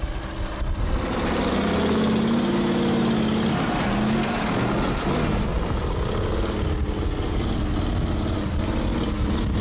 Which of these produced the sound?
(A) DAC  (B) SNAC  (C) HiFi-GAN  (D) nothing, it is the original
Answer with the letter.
D